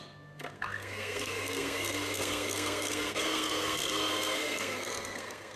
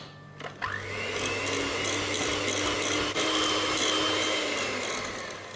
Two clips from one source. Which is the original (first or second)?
second